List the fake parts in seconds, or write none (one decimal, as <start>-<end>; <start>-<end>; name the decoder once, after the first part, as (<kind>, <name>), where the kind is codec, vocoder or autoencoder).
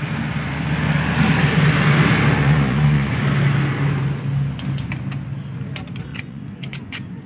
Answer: 2.4-3.2 (vocoder, Vocos); 6.1-7.3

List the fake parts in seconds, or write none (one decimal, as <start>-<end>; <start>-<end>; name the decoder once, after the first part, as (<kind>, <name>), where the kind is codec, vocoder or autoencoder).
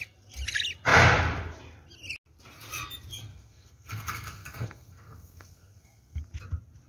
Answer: 3.3-6.2 (codec, SNAC)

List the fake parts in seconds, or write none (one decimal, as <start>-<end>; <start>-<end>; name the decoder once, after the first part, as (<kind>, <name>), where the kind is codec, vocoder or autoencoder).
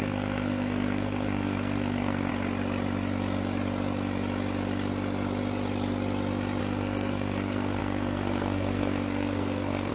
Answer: 0.0-2.3 (codec, SNAC); 6.6-9.9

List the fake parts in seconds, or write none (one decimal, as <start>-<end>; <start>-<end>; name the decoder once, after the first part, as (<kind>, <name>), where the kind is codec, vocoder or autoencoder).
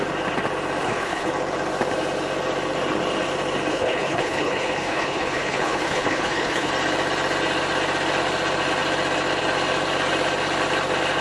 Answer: 0.8-1.3 (codec, HILCodec); 3.7-6.7